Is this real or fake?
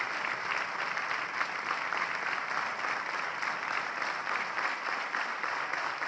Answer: real